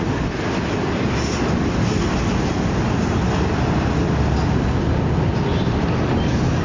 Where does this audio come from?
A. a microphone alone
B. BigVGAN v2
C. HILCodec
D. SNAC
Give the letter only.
A